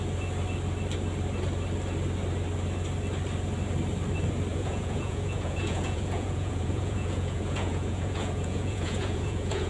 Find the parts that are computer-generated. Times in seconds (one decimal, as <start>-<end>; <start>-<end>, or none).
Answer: 4.5-9.7